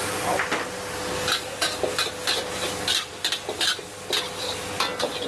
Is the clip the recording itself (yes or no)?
yes